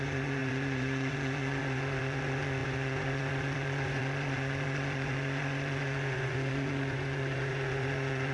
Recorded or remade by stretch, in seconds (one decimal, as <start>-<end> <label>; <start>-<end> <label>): 0.0-8.3 remade